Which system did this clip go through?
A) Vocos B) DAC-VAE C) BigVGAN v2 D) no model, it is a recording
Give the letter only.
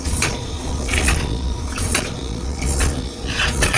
A